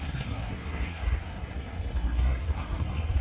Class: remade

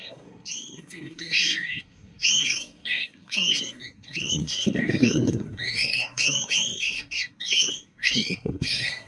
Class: remade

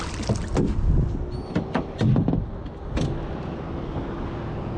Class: recorded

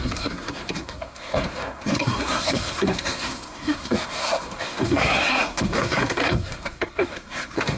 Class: remade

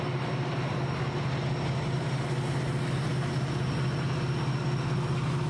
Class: recorded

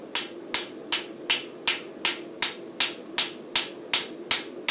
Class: recorded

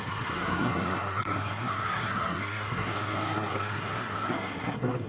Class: remade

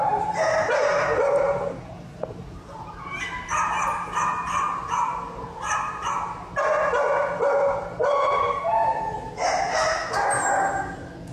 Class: recorded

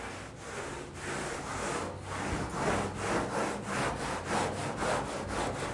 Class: recorded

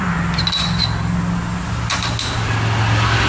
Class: recorded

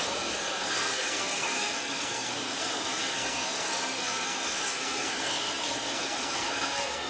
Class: remade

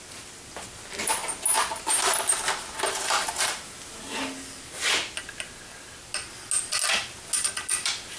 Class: recorded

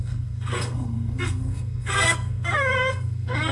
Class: remade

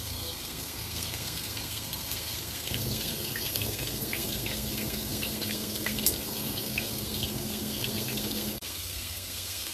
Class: remade